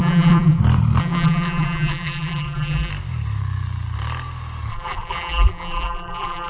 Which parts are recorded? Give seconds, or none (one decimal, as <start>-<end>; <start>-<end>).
0.6-1.0; 2.9-4.7